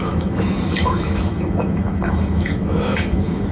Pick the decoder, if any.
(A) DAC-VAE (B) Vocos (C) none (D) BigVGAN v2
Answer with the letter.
A